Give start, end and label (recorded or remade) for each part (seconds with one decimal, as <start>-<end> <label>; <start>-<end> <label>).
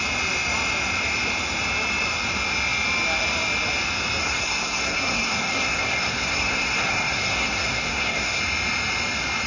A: 0.0-4.2 recorded; 4.2-8.4 remade; 8.4-9.5 recorded